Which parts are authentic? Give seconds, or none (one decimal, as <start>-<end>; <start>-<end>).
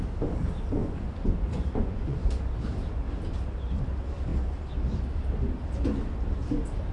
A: 0.0-0.8; 2.3-6.9